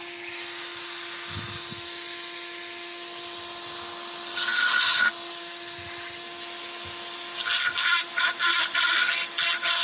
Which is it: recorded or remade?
recorded